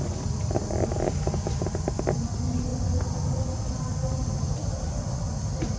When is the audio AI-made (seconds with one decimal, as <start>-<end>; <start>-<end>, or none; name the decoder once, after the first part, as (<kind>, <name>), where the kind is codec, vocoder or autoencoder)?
none